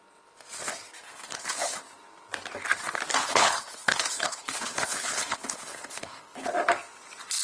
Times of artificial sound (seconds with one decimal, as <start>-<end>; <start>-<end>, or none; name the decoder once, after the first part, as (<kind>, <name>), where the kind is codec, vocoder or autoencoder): 1.0-1.8 (codec, HILCodec); 3.2-6.5